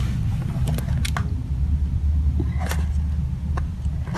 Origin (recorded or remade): recorded